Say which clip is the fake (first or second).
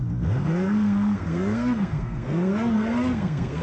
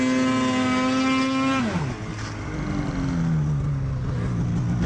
first